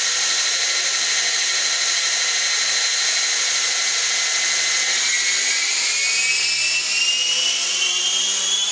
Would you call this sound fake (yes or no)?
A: no